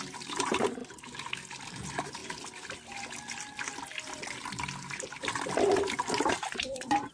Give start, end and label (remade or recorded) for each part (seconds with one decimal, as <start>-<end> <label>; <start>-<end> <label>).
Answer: 0.0-0.8 remade; 0.8-1.6 recorded; 1.6-2.2 remade; 2.2-6.3 recorded; 6.3-7.1 remade